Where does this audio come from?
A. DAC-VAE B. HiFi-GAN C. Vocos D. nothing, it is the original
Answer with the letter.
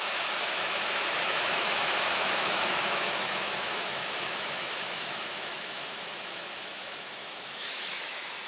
A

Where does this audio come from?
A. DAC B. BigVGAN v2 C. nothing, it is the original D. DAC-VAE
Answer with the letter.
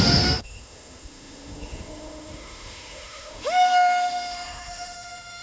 D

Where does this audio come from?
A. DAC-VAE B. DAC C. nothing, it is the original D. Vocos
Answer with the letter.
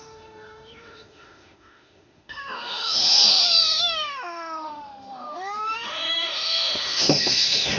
A